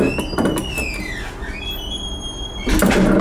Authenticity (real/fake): real